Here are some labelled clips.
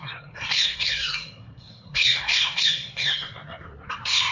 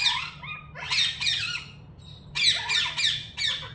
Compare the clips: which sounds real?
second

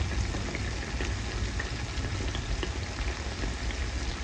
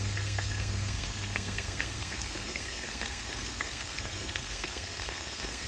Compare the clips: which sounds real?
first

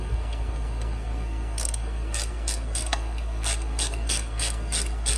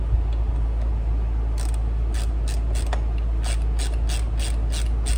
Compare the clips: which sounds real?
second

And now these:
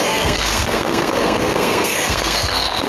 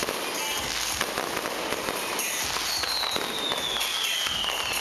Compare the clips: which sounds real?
second